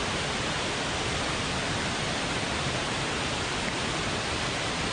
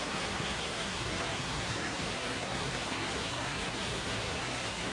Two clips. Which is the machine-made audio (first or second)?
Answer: second